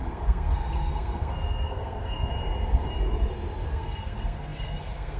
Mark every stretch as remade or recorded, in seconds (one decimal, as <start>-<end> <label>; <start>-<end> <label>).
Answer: 0.0-2.3 remade; 2.3-3.7 recorded; 3.7-5.2 remade